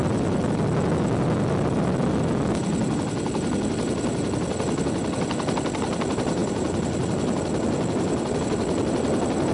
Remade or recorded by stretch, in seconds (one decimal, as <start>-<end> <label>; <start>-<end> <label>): 0.0-9.5 recorded